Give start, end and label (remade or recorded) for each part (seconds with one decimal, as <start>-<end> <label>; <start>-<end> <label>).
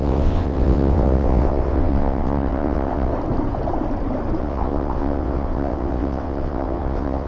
0.0-3.1 remade; 3.1-4.4 recorded; 4.4-7.3 remade